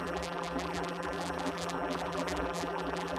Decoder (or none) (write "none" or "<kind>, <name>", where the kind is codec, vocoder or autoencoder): vocoder, BigVGAN v2